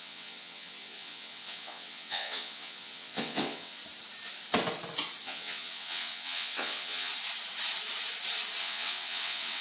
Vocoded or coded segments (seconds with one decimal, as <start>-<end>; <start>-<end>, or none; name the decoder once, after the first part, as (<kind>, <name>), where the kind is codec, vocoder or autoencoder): 0.0-3.8 (vocoder, WaveNeXt); 5.2-7.1; 8.6-9.6